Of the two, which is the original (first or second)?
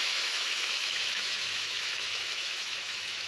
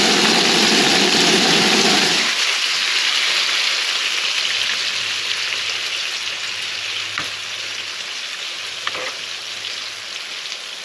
second